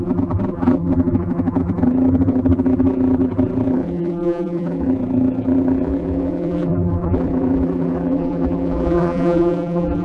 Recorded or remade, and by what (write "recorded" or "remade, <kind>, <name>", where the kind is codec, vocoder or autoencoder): remade, vocoder, BigVGAN v2